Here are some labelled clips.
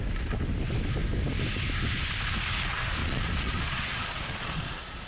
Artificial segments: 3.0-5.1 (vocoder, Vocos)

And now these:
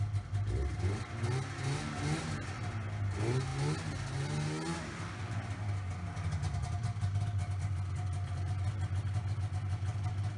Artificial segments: none

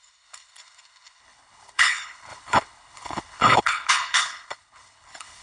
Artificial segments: 0.0-5.4 (codec, HILCodec)

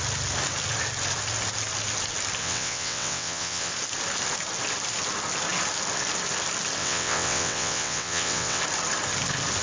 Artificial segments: 2.4-3.7 (vocoder, WaveNeXt); 6.8-8.6

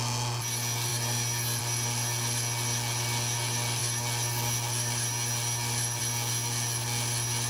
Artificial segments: none

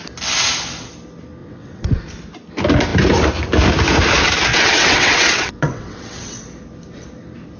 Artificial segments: 1.4-2.0 (vocoder, WaveNeXt); 4.5-6.4

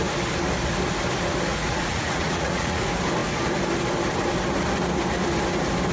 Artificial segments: 1.5-2.8 (vocoder, Vocos)